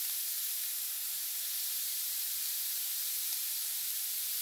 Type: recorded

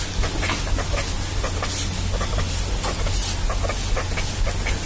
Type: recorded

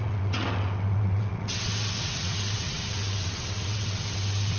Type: remade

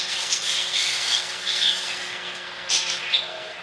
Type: remade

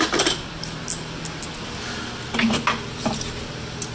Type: recorded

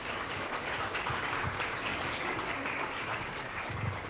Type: remade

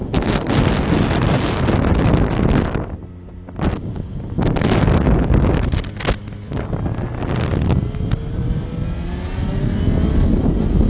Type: recorded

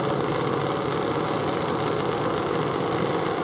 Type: recorded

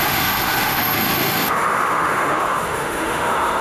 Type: remade